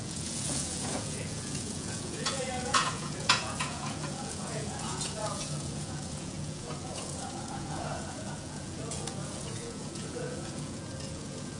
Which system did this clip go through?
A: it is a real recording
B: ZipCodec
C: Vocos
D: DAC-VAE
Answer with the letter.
C